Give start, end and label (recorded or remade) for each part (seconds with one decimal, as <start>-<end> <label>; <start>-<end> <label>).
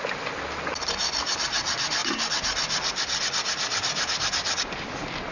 0.0-5.3 recorded